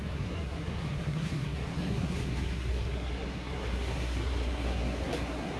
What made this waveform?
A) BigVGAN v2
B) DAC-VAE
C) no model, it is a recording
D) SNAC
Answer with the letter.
D